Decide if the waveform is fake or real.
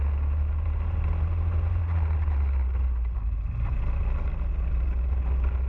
real